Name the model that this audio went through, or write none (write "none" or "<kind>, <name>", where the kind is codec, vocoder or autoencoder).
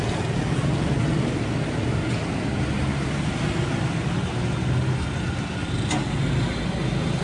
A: none